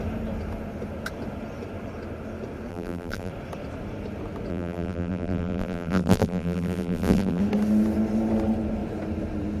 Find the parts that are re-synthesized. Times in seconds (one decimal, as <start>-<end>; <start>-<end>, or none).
2.7-3.3; 4.5-7.4